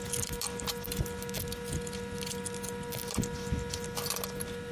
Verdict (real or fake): real